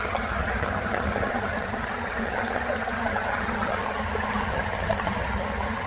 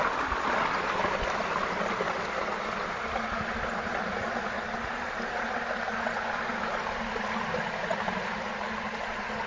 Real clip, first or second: second